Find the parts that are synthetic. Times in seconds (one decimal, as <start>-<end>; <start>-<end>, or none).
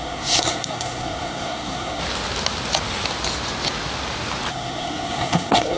0.0-2.0; 4.5-5.8